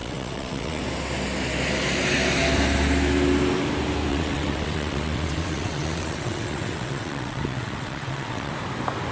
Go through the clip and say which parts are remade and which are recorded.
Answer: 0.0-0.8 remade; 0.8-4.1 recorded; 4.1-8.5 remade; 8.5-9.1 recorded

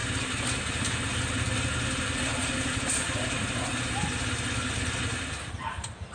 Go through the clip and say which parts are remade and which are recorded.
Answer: 0.0-6.1 recorded

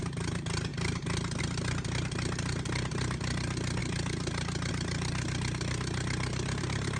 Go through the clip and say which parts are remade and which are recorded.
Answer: 0.0-7.0 recorded